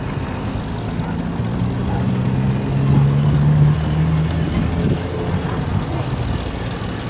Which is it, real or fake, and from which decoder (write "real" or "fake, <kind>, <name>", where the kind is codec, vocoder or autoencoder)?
real